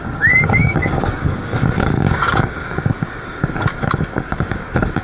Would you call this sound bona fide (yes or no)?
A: no